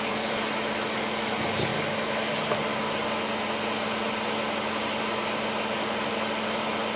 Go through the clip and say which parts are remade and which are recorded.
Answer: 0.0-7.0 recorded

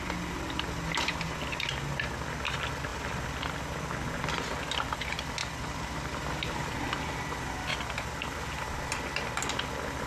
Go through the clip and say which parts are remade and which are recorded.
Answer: 0.0-2.9 recorded; 2.9-3.6 remade; 3.6-5.4 recorded; 5.4-6.2 remade; 6.2-7.7 recorded; 7.7-8.4 remade; 8.4-10.1 recorded

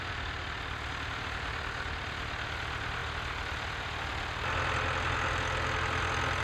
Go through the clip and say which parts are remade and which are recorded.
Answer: 0.0-3.0 recorded; 3.0-4.1 remade; 4.1-6.4 recorded

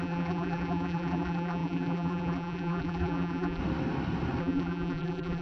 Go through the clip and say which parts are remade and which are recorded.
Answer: 0.0-3.6 remade; 3.6-4.4 recorded; 4.4-5.4 remade

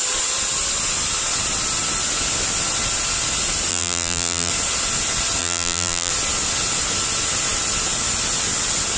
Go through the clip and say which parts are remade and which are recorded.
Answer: 0.0-3.7 recorded; 3.7-4.5 remade; 4.5-5.4 recorded; 5.4-6.1 remade; 6.1-9.0 recorded

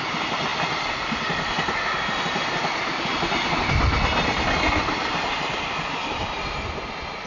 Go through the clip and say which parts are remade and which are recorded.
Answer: 0.0-0.5 remade; 0.5-4.4 recorded; 4.4-6.2 remade; 6.2-7.3 recorded

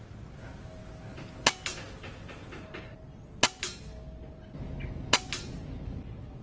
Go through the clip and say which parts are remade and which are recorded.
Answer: 0.0-6.4 recorded

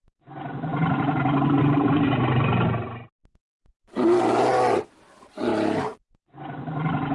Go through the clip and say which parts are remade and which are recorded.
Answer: 0.0-0.7 recorded; 0.7-1.6 remade; 1.6-3.2 recorded; 3.2-4.2 remade; 4.2-5.5 recorded; 5.5-6.4 remade; 6.4-7.1 recorded